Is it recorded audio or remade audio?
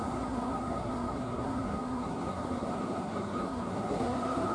remade